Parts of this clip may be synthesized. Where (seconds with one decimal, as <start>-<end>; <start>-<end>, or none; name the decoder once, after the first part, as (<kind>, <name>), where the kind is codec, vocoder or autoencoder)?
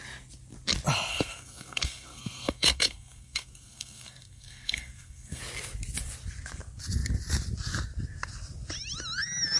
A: 1.1-5.4 (codec, SNAC)